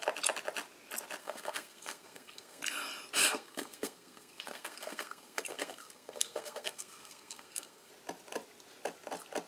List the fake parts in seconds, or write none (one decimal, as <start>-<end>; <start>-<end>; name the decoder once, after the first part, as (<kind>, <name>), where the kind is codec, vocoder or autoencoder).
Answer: 1.2-2.6 (codec, SNAC); 3.2-7.9